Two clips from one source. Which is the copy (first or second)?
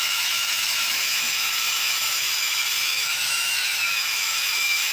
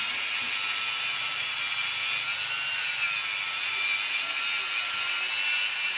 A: first